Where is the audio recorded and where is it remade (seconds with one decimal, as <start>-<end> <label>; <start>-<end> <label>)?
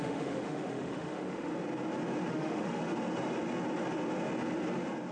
0.0-1.5 remade; 1.5-2.3 recorded; 2.3-2.8 remade; 2.8-5.1 recorded